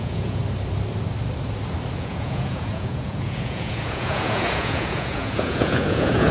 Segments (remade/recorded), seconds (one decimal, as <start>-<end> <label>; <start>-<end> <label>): 0.0-0.4 remade; 0.4-2.0 recorded; 2.0-6.3 remade

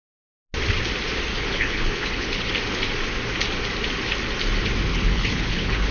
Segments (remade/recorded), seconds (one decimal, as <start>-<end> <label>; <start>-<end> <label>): 0.0-1.3 recorded; 1.3-2.5 remade; 2.5-4.9 recorded; 4.9-5.9 remade

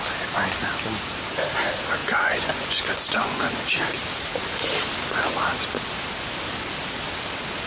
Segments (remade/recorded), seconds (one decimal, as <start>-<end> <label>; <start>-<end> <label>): 0.0-2.0 recorded; 2.0-3.4 remade; 3.4-7.7 recorded

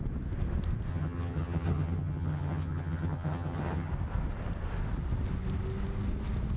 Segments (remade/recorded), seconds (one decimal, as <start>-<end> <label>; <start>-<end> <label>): 0.0-0.9 recorded; 0.9-3.9 remade; 3.9-6.6 recorded